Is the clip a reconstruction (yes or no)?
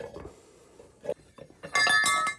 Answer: no